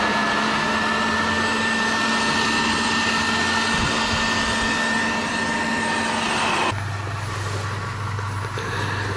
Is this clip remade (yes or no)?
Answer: no